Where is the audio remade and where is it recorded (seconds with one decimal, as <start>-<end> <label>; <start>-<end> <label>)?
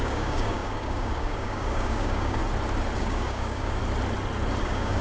0.0-2.4 remade; 2.4-3.0 recorded; 3.0-3.8 remade; 3.8-4.6 recorded; 4.6-5.0 remade